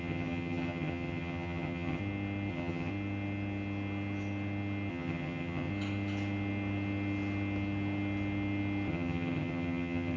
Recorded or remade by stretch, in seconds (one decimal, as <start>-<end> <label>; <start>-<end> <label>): 0.0-2.0 remade; 2.0-2.5 recorded; 2.5-2.9 remade; 2.9-4.9 recorded; 4.9-5.7 remade; 5.7-8.9 recorded; 8.9-10.2 remade